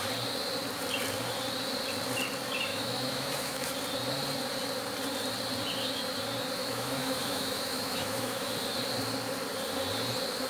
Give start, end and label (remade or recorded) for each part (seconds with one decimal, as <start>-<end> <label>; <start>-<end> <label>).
0.0-2.7 recorded; 2.7-3.7 remade; 3.7-6.6 recorded; 6.6-8.5 remade; 8.5-10.5 recorded